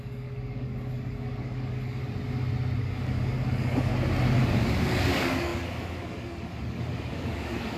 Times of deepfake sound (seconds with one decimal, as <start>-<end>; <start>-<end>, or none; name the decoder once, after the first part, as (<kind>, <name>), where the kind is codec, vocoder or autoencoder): 0.0-2.0 (codec, DAC); 2.8-3.9; 4.4-7.8